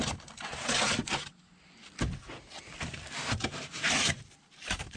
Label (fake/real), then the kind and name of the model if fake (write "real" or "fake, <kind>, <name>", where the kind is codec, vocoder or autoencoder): real